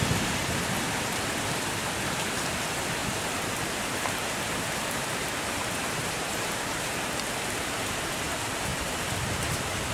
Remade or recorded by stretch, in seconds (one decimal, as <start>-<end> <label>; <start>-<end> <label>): 0.0-3.0 recorded; 3.0-6.9 remade; 6.9-8.7 recorded; 8.7-9.4 remade; 9.4-9.9 recorded